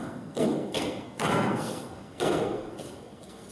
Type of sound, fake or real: fake